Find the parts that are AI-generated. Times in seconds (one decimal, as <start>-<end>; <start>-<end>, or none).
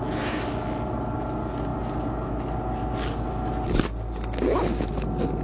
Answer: none